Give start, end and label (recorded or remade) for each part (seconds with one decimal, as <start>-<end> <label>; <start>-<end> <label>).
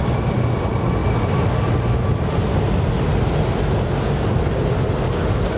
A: 0.0-5.6 recorded